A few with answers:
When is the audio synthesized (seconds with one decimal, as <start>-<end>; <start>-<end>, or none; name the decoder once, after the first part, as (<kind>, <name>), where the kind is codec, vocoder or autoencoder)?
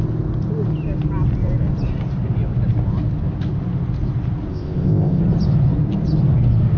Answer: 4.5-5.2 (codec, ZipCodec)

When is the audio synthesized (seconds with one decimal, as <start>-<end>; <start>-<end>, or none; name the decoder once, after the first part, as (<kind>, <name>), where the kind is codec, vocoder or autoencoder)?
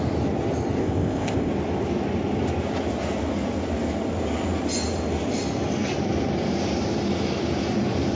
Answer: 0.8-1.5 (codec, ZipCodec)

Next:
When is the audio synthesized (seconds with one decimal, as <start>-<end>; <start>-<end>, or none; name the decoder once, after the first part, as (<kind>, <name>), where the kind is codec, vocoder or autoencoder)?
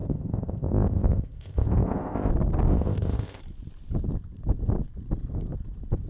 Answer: 0.0-2.3 (codec, ZipCodec); 2.7-3.4